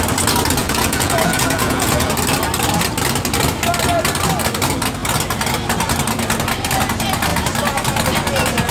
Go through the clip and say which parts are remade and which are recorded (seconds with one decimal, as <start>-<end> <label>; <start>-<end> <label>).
0.0-0.6 recorded; 0.6-2.1 remade; 2.1-8.7 recorded